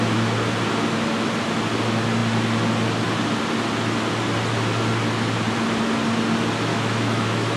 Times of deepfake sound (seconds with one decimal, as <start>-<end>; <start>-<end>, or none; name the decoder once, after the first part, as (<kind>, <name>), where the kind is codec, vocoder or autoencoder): 6.7-7.6 (autoencoder, DAC-VAE)

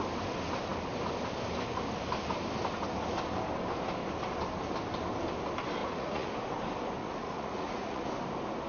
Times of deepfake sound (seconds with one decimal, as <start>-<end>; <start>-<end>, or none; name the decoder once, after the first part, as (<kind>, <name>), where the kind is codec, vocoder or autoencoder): 5.8-6.3 (vocoder, Vocos); 7.0-8.0